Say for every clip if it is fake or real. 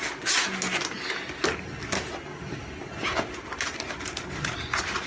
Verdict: real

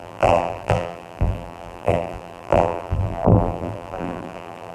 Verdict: fake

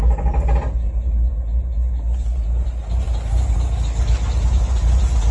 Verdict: real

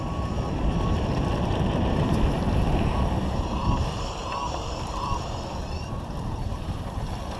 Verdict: fake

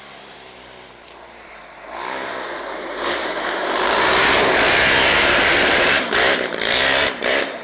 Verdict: fake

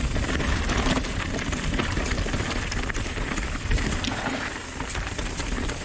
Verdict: fake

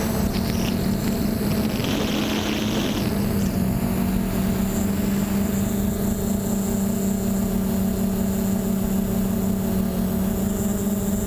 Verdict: real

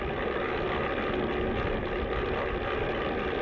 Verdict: real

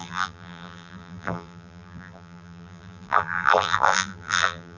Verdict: fake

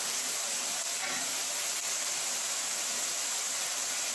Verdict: fake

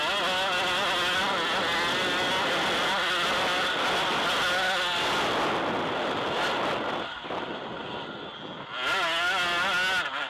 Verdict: real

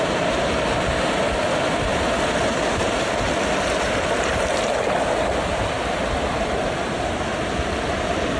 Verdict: real